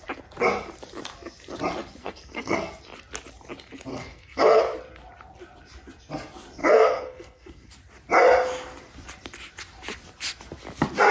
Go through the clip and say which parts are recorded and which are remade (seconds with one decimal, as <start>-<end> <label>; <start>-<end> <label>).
0.0-2.0 recorded; 2.0-2.7 remade; 2.7-3.9 recorded; 3.9-4.6 remade; 4.6-6.6 recorded; 6.6-7.7 remade; 7.7-11.1 recorded